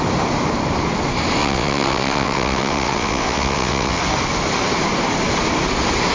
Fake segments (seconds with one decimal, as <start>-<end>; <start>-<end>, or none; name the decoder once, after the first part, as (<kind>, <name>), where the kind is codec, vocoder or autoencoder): 1.4-4.0 (vocoder, WaveNeXt)